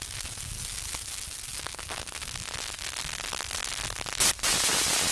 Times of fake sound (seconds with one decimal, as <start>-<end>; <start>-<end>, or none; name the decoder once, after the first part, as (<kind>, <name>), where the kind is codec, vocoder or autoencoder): none